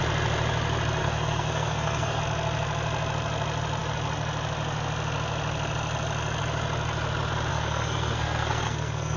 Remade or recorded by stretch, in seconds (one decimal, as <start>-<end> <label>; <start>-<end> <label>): 0.0-1.0 recorded; 1.0-2.2 remade; 2.2-7.5 recorded; 7.5-9.2 remade